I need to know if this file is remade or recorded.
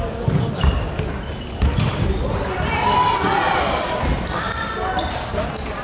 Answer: recorded